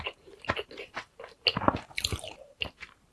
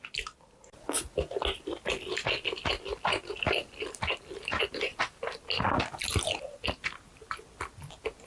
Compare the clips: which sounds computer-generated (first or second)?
first